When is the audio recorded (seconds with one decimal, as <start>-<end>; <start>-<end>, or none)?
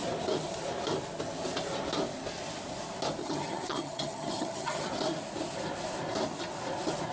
0.0-3.2; 4.9-7.1